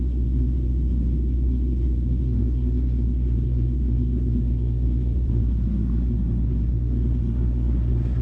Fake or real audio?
fake